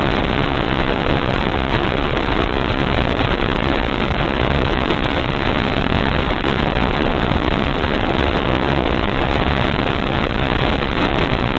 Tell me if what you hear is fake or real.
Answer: fake